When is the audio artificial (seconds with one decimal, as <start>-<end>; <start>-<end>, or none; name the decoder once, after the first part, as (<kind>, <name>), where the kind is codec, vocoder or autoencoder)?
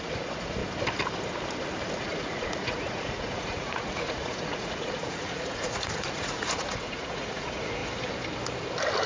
0.0-0.6 (vocoder, Vocos); 2.0-7.8